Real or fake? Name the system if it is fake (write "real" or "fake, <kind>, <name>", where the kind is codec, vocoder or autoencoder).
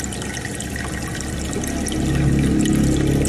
real